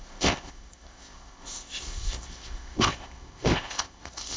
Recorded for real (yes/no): no